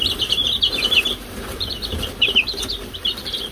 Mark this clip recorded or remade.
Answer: remade